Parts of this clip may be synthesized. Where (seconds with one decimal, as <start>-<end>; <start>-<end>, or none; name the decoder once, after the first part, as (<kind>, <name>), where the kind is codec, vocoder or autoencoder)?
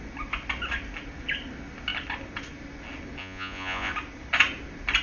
3.2-3.9 (vocoder, Vocos)